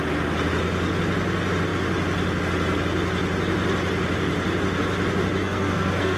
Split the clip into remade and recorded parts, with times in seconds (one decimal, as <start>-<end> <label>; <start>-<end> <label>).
0.0-5.4 recorded; 5.4-6.2 remade